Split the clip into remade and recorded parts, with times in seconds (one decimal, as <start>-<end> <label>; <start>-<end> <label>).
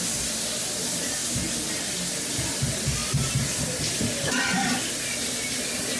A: 0.0-3.0 recorded; 3.0-3.7 remade; 3.7-6.0 recorded